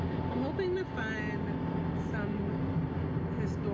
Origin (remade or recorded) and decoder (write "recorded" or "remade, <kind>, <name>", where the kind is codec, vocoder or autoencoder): recorded